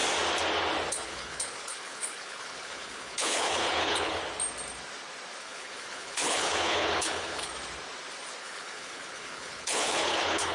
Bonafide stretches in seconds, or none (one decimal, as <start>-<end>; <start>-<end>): 0.0-0.9; 4.2-5.4; 7.5-8.4